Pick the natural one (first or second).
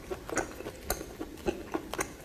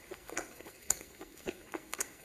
first